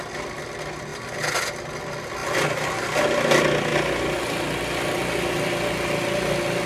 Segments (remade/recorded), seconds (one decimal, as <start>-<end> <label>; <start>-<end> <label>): 0.0-6.7 recorded